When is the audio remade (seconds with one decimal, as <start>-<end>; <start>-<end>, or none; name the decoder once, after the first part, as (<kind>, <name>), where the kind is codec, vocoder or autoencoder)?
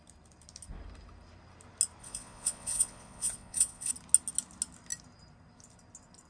2.0-3.9 (vocoder, Vocos)